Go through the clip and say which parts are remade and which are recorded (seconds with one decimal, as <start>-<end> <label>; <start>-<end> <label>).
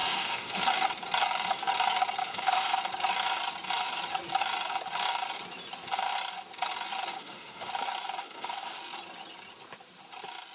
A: 0.0-0.6 remade; 0.6-2.2 recorded; 2.2-2.8 remade; 2.8-7.1 recorded; 7.1-7.7 remade; 7.7-8.2 recorded; 8.2-8.8 remade; 8.8-10.5 recorded